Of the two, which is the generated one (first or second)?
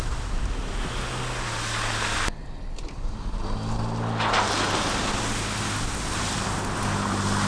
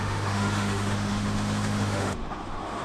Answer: second